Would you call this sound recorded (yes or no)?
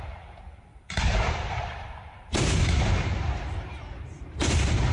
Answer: no